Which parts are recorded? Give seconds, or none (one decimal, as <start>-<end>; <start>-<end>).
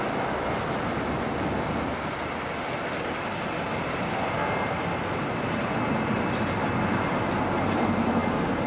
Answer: 0.0-8.7